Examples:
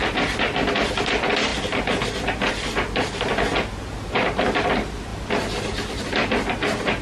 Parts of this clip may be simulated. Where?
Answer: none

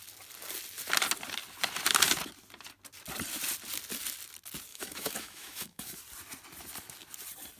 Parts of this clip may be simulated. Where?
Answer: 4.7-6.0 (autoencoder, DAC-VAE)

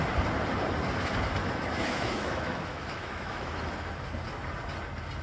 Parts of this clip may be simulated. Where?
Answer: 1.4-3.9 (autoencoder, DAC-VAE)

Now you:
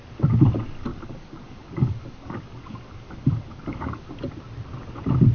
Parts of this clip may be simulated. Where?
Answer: 0.9-4.1 (codec, DAC)

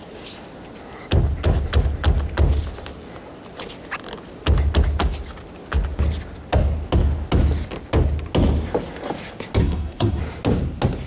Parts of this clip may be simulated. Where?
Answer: 9.6-10.2 (codec, SNAC)